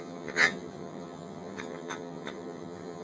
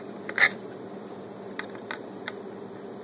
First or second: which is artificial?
first